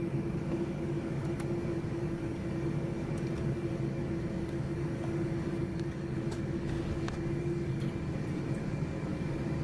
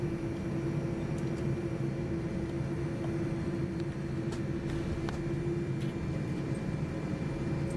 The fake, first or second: first